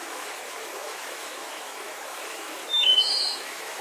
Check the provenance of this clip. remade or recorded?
remade